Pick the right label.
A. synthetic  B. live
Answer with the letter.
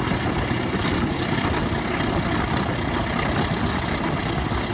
B